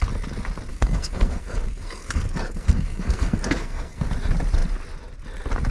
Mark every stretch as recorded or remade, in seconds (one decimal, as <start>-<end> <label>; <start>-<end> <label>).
0.0-0.7 recorded; 0.7-4.1 remade; 4.1-5.7 recorded